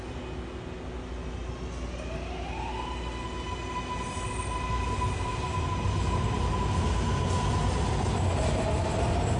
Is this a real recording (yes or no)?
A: yes